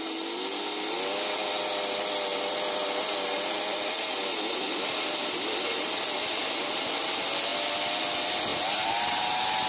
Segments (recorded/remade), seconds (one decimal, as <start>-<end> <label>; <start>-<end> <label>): 0.0-2.3 recorded; 2.3-3.9 remade; 3.9-8.5 recorded; 8.5-9.7 remade